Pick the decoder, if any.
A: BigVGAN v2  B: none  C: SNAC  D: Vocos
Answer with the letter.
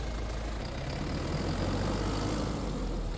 B